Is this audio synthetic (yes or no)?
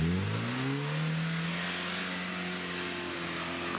no